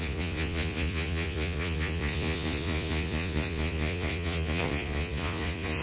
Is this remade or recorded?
remade